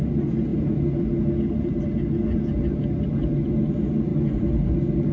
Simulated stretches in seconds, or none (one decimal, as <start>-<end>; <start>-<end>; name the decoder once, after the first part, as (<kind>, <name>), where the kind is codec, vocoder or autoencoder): none